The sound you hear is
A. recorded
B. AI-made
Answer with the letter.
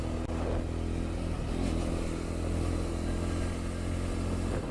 A